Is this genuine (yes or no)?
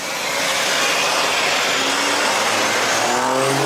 yes